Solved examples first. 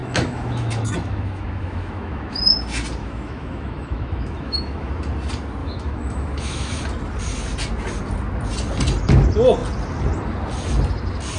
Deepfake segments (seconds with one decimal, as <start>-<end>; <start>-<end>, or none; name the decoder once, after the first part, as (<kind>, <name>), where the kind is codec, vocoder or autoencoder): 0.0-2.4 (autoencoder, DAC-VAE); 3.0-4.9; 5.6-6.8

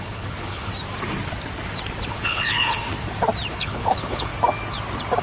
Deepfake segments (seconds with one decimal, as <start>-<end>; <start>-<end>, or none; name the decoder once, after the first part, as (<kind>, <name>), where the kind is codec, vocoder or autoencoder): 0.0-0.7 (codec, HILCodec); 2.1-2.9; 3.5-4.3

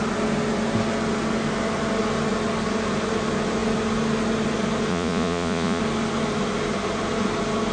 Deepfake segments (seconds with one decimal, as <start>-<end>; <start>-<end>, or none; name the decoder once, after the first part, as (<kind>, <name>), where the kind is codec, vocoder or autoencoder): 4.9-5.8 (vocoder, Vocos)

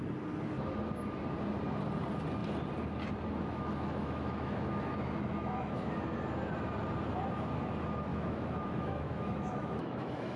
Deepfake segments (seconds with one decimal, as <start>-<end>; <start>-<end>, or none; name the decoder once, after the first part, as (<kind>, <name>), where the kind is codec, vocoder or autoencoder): 3.5-5.9 (autoencoder, DAC-VAE); 8.1-10.4

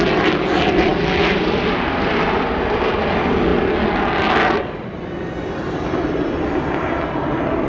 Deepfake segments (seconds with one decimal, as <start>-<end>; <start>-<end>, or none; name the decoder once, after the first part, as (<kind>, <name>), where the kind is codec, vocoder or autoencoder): none